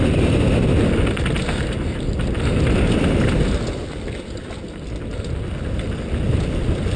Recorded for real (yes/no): yes